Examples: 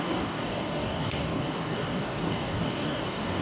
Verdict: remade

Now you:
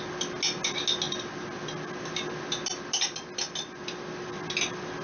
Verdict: recorded